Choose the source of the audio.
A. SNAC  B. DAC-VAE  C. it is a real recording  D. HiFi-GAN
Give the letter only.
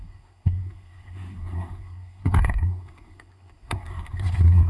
A